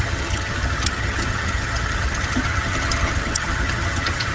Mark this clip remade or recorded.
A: remade